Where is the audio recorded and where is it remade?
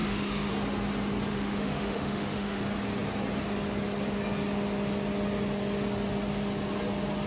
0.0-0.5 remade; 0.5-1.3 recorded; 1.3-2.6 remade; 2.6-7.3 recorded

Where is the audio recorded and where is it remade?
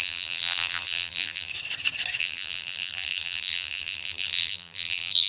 0.0-1.5 remade; 1.5-2.2 recorded; 2.2-5.3 remade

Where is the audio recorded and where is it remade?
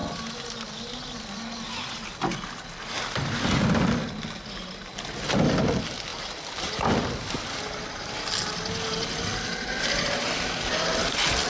0.0-11.5 recorded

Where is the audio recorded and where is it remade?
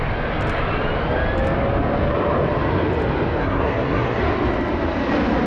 0.0-3.4 recorded; 3.4-4.2 remade; 4.2-5.5 recorded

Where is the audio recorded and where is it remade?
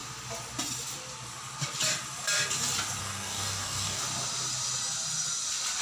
0.0-3.0 recorded; 3.0-4.0 remade; 4.0-5.8 recorded